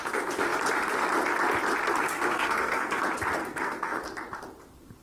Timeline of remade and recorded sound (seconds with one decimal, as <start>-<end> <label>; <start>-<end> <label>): 0.0-1.9 recorded; 1.9-3.0 remade; 3.0-3.4 recorded; 3.4-4.0 remade; 4.0-5.0 recorded